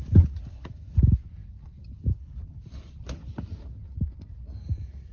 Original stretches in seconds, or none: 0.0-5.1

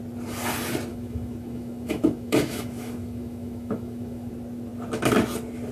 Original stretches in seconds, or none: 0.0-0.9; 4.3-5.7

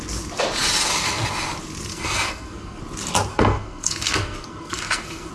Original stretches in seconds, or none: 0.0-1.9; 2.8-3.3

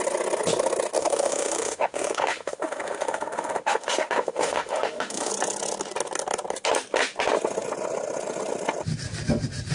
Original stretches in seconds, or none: 0.0-1.0; 5.3-9.7

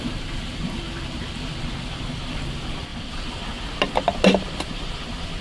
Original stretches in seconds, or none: 0.0-2.9; 3.5-5.4